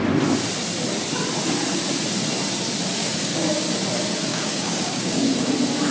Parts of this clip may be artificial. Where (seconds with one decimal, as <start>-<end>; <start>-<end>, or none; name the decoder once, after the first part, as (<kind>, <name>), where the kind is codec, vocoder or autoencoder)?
3.0-3.5 (codec, DAC); 4.3-5.5